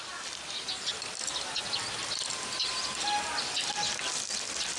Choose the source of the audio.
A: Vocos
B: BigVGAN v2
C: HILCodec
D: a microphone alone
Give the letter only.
D